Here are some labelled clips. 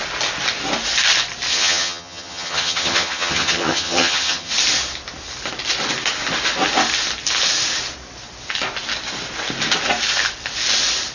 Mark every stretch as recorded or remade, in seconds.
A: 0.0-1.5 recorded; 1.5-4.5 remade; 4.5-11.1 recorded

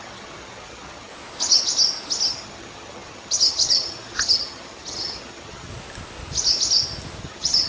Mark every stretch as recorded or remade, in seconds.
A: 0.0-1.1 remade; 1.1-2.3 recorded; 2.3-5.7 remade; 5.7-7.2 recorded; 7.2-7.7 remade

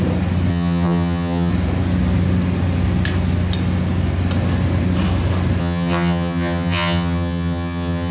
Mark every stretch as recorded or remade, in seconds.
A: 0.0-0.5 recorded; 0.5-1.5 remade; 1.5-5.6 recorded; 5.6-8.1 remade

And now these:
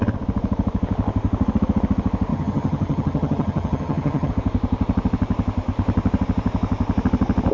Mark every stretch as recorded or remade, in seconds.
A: 0.0-2.3 recorded; 2.3-4.3 remade; 4.3-7.5 recorded

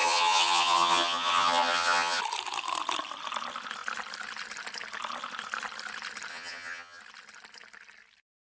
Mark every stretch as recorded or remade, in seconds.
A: 0.0-2.2 remade; 2.2-6.3 recorded; 6.3-7.0 remade; 7.0-8.5 recorded